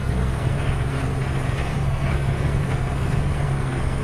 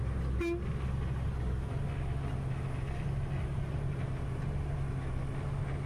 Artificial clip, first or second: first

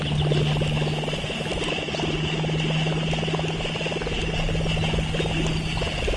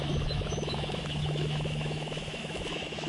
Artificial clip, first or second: second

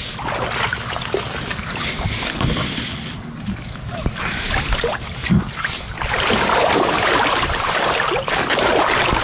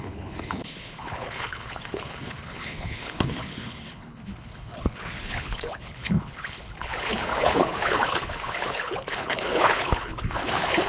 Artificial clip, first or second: second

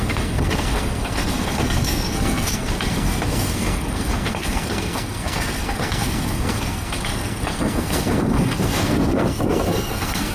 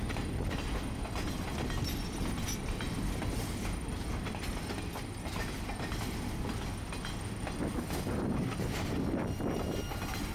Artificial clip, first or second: first